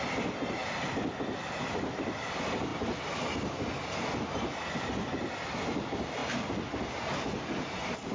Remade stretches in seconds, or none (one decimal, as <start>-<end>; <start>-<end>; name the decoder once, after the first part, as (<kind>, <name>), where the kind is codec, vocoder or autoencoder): 0.6-1.1 (vocoder, BigVGAN v2)